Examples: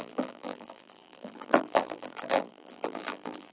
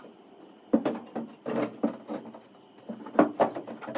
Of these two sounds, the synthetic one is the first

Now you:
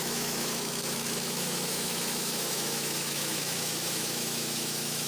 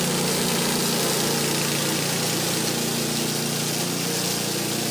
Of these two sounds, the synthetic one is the first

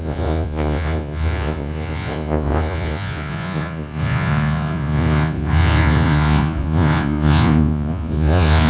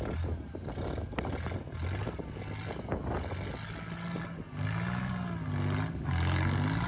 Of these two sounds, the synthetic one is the first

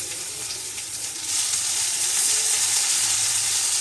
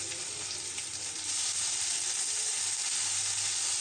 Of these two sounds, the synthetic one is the first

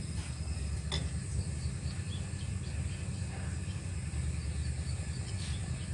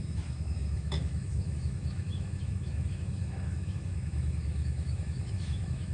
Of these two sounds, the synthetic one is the second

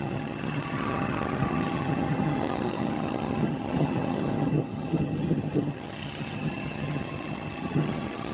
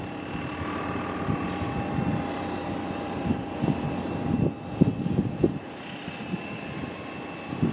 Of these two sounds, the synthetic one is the first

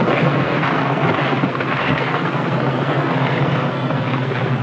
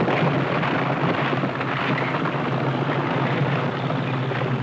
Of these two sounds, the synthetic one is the first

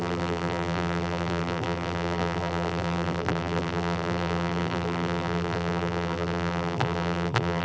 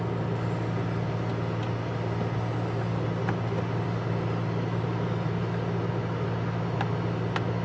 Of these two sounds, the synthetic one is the first